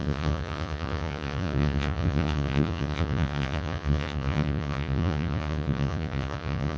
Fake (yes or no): yes